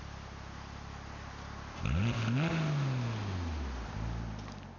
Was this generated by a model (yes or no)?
no